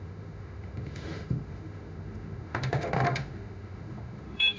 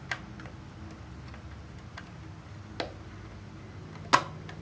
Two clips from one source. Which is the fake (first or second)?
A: first